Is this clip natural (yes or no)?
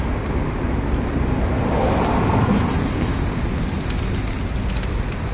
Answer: yes